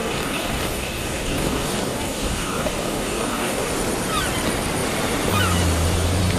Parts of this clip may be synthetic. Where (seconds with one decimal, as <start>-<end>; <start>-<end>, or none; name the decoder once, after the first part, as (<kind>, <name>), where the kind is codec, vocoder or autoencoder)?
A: 0.0-3.7 (codec, DAC)